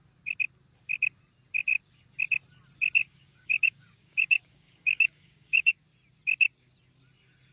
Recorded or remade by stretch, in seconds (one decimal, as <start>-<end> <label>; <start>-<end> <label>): 0.0-3.0 recorded; 3.0-5.7 remade; 5.7-7.5 recorded